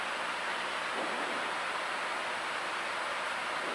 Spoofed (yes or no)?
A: no